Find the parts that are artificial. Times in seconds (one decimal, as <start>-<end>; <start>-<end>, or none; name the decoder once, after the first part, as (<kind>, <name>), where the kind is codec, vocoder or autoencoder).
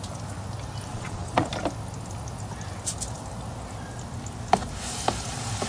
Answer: 0.9-1.5 (vocoder, Vocos)